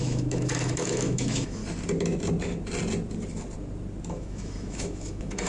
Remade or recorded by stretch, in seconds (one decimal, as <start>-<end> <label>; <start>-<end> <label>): 0.0-1.6 remade; 1.6-4.1 recorded; 4.1-5.5 remade